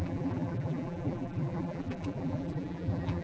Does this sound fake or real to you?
fake